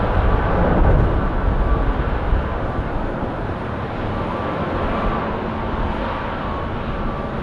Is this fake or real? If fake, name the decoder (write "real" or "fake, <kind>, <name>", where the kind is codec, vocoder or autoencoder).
real